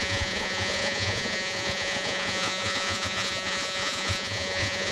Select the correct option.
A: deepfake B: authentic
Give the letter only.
A